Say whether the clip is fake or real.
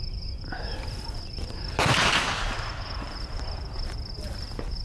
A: real